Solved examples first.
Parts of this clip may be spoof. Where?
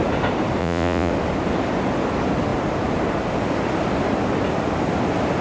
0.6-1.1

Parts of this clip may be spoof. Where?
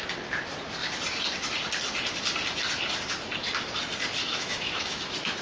4.2-5.4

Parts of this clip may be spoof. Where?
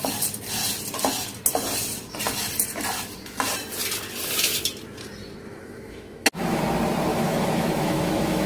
5.5-6.6; 7.1-8.5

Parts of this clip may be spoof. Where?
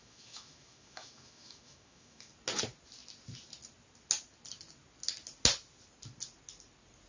0.0-2.3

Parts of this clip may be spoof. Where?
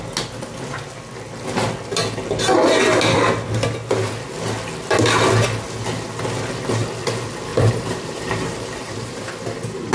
7.5-9.3